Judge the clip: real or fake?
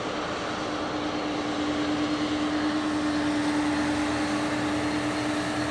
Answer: real